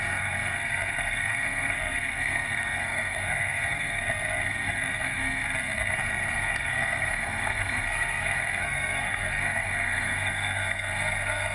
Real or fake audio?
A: fake